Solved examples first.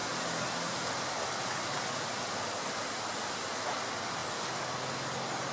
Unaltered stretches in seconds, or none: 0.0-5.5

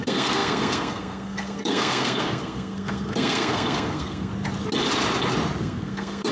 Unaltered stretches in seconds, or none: 4.3-5.6

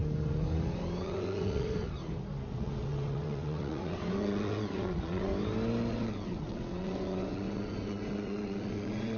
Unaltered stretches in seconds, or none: 0.0-1.0; 2.0-2.5; 5.3-5.9

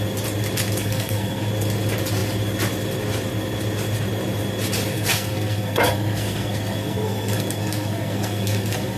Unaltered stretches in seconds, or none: 0.0-0.8; 1.5-4.9

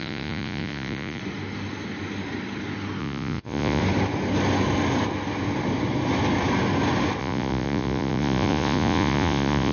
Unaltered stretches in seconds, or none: 1.2-3.0; 3.8-7.2

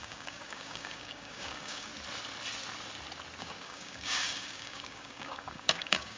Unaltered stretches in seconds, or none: 1.9-3.4

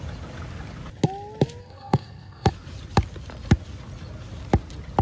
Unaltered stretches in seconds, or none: 0.0-1.6; 2.5-5.0